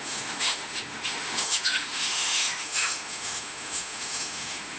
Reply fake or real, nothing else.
fake